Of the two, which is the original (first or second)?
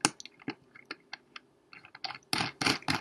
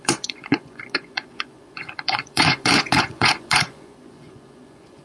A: first